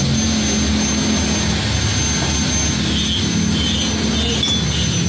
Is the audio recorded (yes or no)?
yes